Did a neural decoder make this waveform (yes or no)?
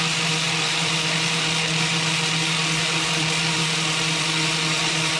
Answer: yes